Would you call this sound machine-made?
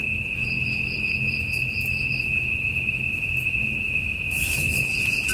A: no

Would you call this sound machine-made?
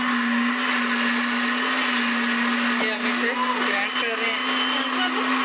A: no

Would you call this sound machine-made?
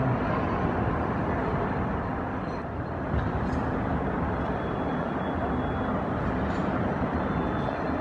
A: no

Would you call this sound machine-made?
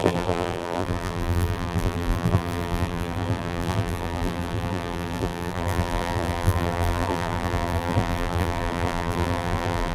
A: yes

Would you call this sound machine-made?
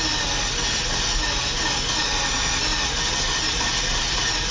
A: no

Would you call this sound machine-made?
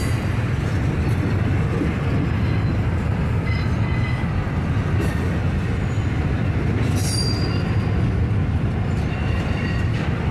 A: no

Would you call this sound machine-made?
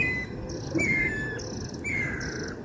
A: no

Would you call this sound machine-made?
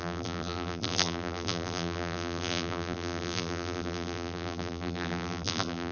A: yes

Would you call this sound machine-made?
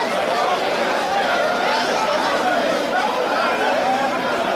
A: yes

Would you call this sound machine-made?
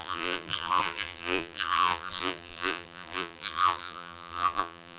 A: yes